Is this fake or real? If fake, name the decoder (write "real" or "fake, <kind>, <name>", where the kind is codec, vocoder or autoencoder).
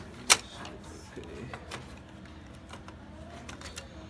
real